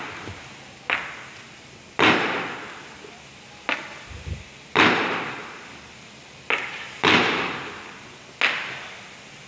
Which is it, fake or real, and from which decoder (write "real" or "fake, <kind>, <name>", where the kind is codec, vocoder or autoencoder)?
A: real